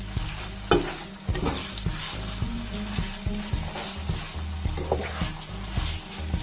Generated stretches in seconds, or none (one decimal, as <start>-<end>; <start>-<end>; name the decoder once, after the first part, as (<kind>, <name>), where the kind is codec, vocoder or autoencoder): none